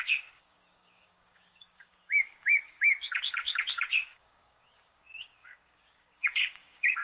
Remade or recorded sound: remade